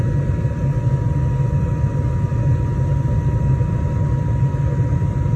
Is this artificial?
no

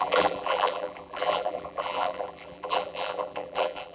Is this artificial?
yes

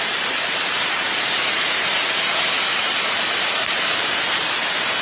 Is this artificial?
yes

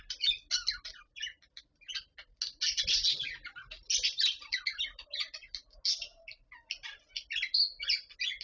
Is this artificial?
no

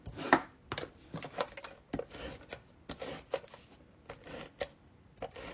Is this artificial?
no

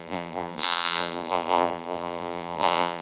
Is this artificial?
yes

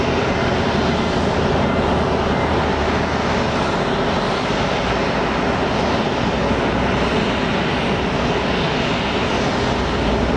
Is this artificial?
no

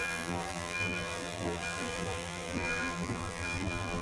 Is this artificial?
yes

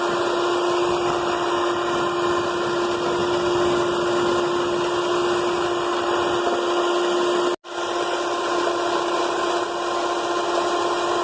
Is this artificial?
no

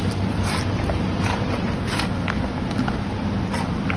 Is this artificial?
no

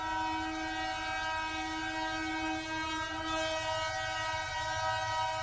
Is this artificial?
no